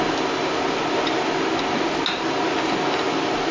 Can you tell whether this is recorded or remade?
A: recorded